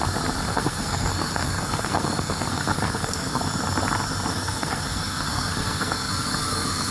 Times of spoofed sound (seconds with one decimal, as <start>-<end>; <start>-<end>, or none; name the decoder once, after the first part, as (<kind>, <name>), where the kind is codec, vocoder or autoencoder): 0.5-3.4 (codec, SNAC); 4.3-6.9